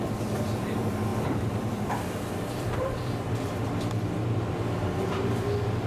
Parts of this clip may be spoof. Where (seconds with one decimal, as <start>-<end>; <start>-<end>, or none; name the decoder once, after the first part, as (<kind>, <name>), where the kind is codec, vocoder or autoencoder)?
0.0-5.9 (vocoder, BigVGAN v2)